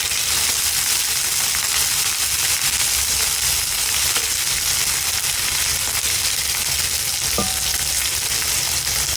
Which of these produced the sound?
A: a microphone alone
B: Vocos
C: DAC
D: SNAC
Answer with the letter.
A